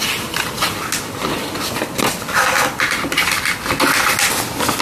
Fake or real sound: real